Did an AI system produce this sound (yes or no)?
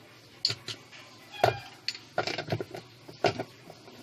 no